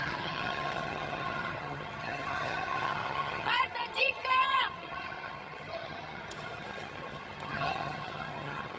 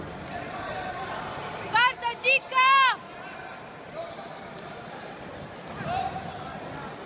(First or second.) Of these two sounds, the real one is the second